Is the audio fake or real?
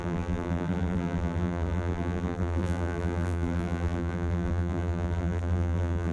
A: fake